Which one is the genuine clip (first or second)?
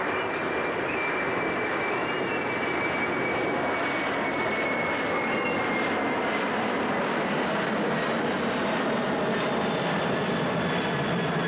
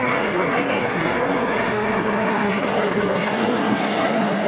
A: first